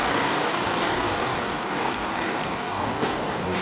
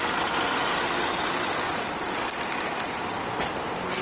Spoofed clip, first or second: first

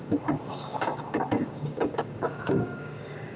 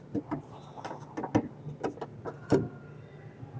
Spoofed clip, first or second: first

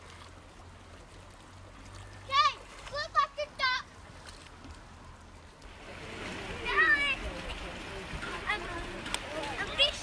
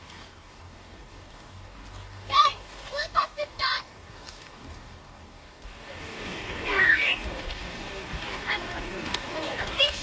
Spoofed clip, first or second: second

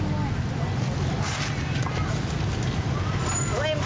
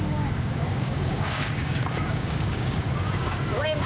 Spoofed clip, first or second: second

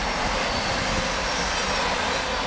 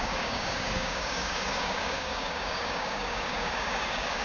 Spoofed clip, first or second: second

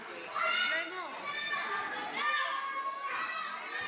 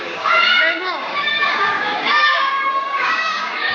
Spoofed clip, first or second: second